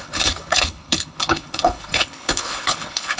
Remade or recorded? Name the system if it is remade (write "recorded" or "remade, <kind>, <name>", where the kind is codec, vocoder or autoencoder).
remade, codec, HILCodec